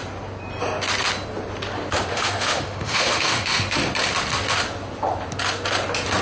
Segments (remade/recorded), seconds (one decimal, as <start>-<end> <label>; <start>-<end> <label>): 0.0-2.1 recorded; 2.1-3.8 remade; 3.8-6.2 recorded